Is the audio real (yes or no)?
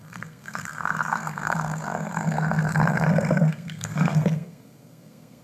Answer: no